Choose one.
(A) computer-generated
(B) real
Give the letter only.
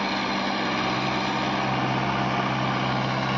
B